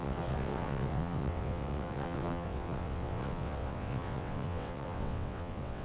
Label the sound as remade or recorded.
remade